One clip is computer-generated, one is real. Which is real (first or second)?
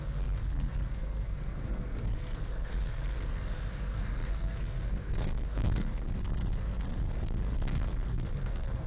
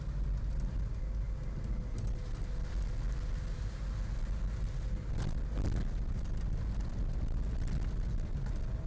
second